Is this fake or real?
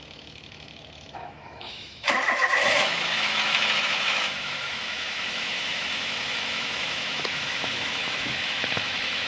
fake